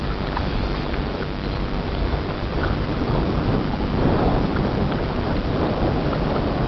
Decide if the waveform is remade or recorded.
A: remade